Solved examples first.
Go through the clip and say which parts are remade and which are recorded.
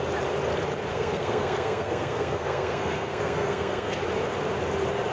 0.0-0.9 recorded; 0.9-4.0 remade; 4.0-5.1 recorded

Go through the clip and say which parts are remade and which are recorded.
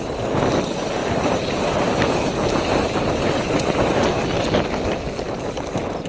0.0-1.0 recorded; 1.0-1.9 remade; 1.9-6.1 recorded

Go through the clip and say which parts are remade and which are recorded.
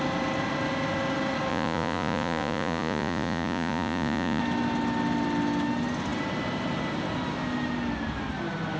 0.0-1.5 recorded; 1.5-4.4 remade; 4.4-8.8 recorded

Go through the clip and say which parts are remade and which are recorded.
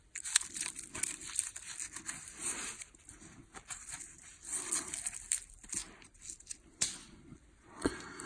0.0-7.0 recorded; 7.0-7.9 remade; 7.9-8.3 recorded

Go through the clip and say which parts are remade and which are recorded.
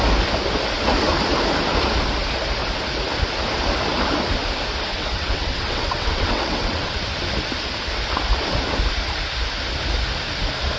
0.0-4.9 recorded; 4.9-7.0 remade; 7.0-10.8 recorded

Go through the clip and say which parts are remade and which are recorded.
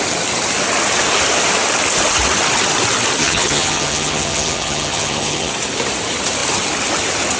0.0-3.2 recorded; 3.2-5.5 remade; 5.5-7.4 recorded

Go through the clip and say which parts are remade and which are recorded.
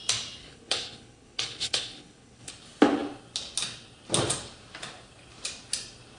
0.0-0.4 recorded; 0.4-2.5 remade; 2.5-6.2 recorded